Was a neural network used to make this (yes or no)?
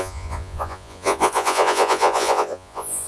yes